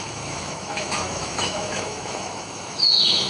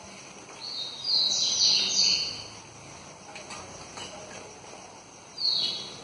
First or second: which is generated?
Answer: first